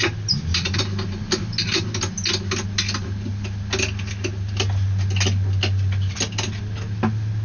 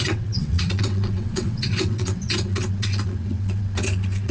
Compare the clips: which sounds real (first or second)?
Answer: first